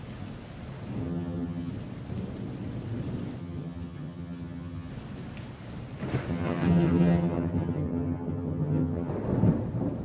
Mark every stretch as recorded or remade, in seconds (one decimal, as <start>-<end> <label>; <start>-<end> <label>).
0.0-1.0 recorded; 1.0-1.7 remade; 1.7-3.4 recorded; 3.4-4.9 remade; 4.9-6.3 recorded; 6.3-9.1 remade; 9.1-10.0 recorded